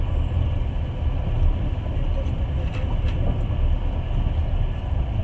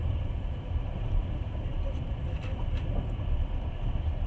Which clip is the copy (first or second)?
second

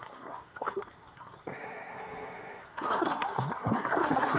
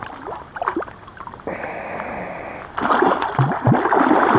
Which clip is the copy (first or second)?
first